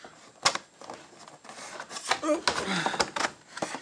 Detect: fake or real real